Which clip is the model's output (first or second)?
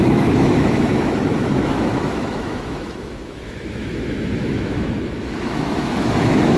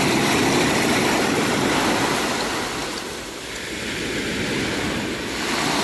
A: first